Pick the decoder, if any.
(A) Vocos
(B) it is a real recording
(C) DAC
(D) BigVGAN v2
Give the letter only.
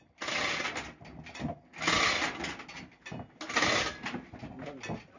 B